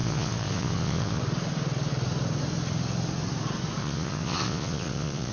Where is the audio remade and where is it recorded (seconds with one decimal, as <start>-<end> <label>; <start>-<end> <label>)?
0.0-1.2 remade; 1.2-3.8 recorded; 3.8-5.3 remade